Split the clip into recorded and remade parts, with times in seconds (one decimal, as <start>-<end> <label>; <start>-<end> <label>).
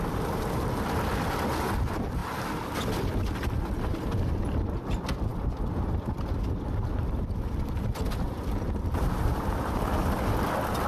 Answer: 0.0-10.9 recorded